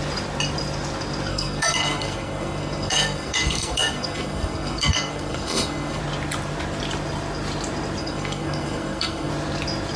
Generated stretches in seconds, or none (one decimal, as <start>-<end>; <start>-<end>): 1.3-6.0; 8.0-9.3